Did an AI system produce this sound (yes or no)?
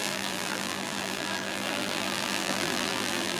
yes